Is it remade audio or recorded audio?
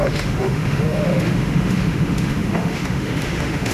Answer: remade